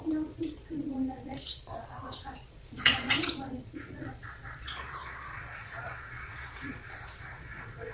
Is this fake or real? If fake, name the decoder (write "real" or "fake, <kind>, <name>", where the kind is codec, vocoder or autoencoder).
fake, vocoder, Vocos